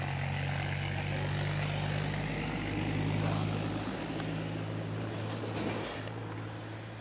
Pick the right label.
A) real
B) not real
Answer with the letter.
A